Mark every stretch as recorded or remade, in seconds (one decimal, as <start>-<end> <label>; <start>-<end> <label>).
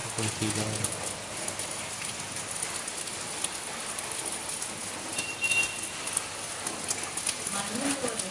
0.0-8.3 recorded